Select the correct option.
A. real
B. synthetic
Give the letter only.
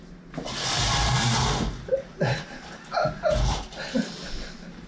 A